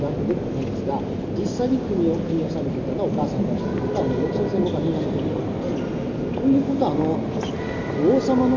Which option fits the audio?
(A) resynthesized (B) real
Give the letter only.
B